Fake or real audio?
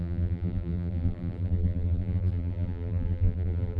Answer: fake